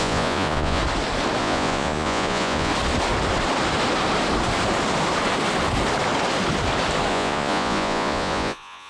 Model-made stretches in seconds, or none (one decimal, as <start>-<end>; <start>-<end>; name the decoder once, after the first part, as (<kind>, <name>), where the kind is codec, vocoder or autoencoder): 0.0-0.8 (vocoder, Vocos); 1.4-2.7; 7.1-8.9